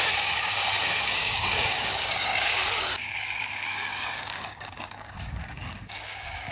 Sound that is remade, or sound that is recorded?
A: remade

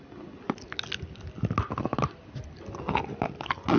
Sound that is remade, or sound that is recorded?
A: recorded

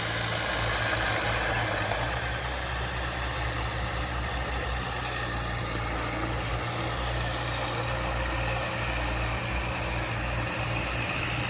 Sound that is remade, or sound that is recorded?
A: recorded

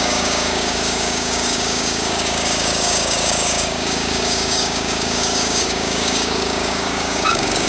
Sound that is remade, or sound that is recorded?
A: remade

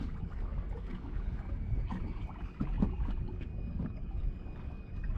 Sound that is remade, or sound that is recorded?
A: remade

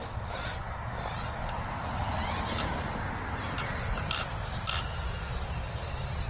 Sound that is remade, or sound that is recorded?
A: recorded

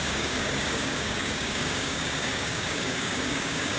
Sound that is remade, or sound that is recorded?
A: remade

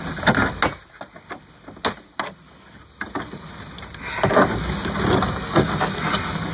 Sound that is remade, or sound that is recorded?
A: recorded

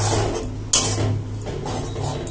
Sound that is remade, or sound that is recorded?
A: recorded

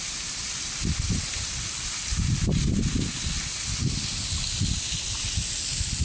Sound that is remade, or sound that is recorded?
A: recorded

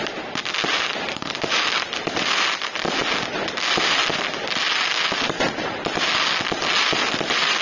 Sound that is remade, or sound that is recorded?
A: recorded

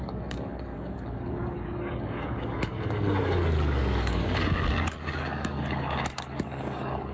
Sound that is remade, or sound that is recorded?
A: remade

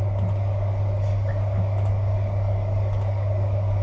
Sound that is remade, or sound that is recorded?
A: remade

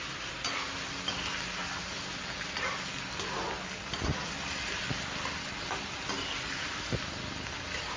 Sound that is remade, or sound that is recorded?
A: recorded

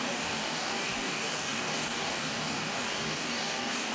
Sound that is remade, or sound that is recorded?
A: remade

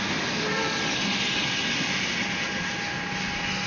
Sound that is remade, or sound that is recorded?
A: recorded